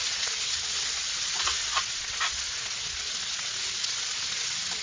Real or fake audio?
fake